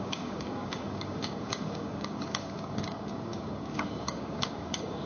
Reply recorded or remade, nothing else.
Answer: remade